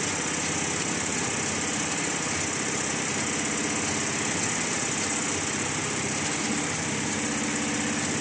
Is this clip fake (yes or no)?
no